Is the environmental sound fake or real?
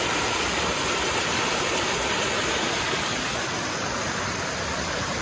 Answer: real